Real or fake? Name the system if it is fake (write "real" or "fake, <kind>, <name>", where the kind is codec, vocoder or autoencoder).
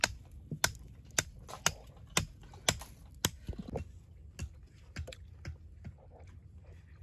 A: real